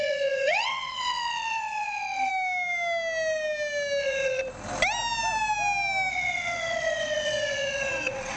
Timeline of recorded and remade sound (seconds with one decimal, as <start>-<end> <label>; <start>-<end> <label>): 0.0-2.3 remade; 2.3-4.0 recorded; 4.0-4.4 remade; 4.4-6.1 recorded; 6.1-8.4 remade